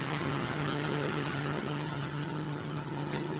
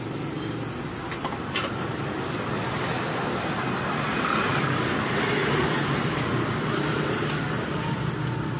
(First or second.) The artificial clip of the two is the first